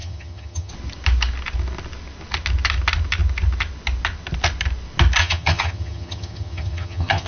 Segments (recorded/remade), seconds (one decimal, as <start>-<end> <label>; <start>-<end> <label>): 0.0-0.7 remade; 0.7-5.2 recorded; 5.2-7.3 remade